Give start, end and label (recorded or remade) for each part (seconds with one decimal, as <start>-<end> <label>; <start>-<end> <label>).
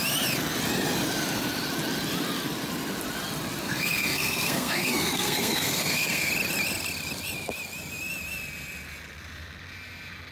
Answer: 0.0-3.6 recorded; 3.6-6.3 remade; 6.3-10.3 recorded